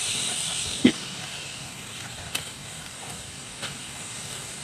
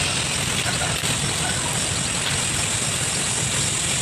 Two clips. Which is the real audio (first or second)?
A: second